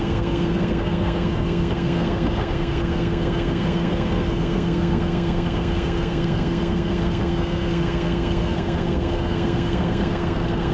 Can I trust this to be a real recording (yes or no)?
no